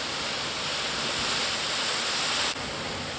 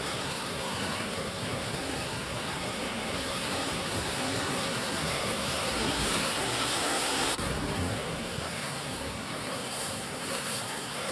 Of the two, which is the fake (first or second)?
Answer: second